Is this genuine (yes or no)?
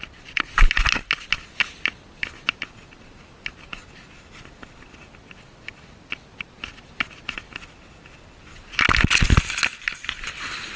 yes